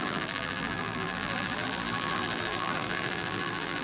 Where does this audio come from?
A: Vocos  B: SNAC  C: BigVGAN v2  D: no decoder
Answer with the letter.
C